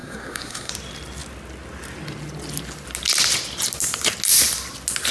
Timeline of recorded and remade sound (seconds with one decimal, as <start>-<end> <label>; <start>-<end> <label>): 0.0-0.7 remade; 0.7-5.1 recorded